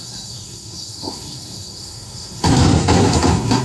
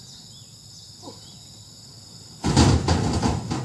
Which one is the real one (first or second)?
second